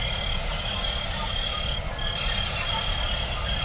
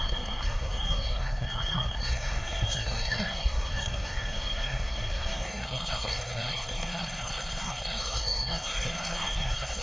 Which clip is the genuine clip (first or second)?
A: first